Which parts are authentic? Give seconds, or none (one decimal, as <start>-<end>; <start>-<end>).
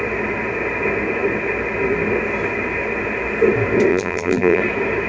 0.0-3.9; 4.6-5.1